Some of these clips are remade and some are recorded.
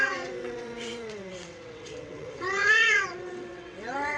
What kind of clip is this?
remade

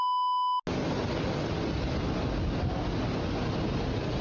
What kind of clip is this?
recorded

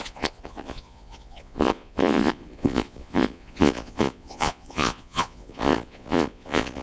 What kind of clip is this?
remade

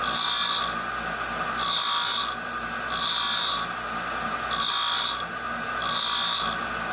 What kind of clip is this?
recorded